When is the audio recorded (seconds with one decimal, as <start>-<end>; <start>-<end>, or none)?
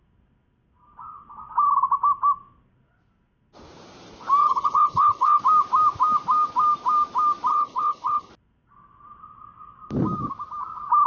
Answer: 0.0-4.4; 5.4-7.5; 8.3-11.1